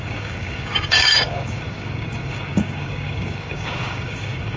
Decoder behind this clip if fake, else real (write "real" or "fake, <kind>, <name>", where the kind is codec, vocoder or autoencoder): fake, codec, DAC